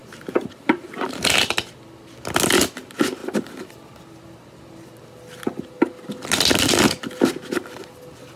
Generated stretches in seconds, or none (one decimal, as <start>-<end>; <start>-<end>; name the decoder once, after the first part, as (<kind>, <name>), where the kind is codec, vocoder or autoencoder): 0.0-1.5 (vocoder, BigVGAN v2)